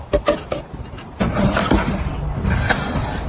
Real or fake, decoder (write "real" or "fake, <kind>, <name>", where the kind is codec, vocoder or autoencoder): real